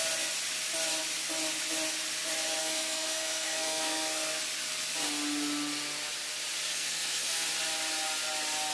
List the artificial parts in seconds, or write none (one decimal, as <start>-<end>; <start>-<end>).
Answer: 2.6-4.4; 6.7-7.5